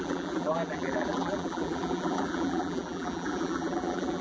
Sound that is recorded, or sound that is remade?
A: remade